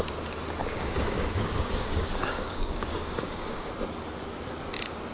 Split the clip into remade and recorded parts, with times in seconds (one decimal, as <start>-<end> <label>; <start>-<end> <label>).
0.0-0.6 recorded; 0.6-3.7 remade; 3.7-5.1 recorded